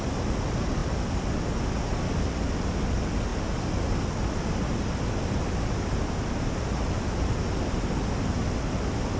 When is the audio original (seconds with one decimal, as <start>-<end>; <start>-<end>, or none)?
0.0-9.2